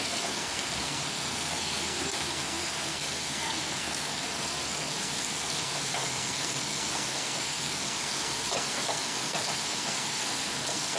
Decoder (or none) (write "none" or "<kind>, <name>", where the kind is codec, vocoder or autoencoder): codec, SNAC